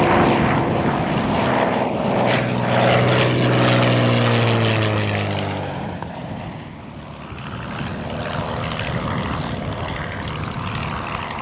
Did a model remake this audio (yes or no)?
no